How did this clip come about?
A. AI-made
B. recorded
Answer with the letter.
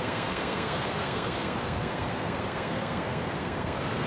A